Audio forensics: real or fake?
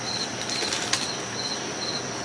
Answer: real